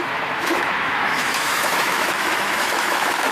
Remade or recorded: remade